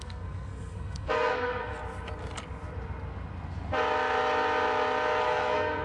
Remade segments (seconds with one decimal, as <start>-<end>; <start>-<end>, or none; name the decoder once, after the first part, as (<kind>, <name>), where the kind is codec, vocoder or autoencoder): 0.0-1.7 (codec, SNAC); 5.2-5.8